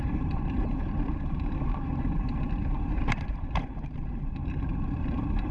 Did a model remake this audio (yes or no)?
yes